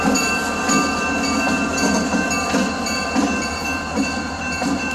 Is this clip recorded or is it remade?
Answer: recorded